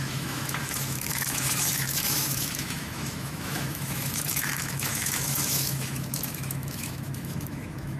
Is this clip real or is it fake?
fake